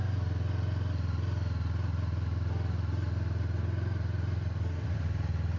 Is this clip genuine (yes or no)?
yes